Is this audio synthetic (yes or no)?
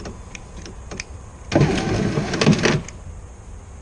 no